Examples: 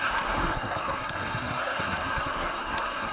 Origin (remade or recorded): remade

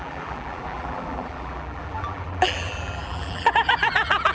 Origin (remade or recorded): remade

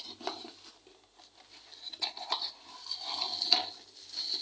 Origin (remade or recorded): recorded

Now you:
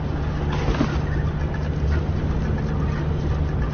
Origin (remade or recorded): recorded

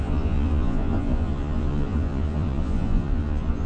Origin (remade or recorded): remade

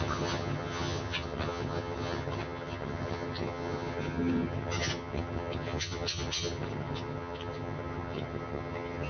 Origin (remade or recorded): remade